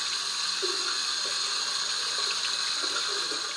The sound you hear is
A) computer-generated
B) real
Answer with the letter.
B